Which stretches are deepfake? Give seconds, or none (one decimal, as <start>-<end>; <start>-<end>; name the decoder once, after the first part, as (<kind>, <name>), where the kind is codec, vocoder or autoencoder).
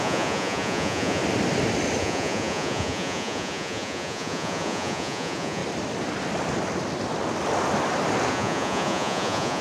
0.0-1.2 (vocoder, Vocos); 2.0-5.6; 8.3-9.6